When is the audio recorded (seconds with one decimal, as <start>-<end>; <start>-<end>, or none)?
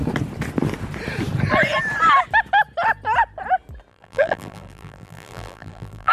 0.0-3.9